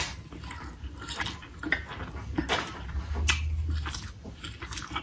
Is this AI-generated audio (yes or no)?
no